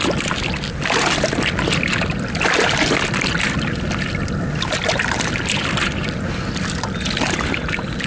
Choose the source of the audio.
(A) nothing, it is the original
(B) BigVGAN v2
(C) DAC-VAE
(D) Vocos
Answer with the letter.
B